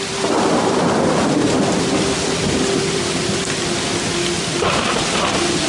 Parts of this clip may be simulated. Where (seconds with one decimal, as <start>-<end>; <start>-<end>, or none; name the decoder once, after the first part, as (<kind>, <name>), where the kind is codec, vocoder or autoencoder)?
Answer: none